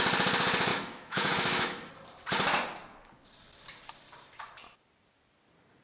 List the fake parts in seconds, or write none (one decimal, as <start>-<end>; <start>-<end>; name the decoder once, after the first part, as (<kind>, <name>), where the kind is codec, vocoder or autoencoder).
0.7-1.9 (autoencoder, DAC-VAE)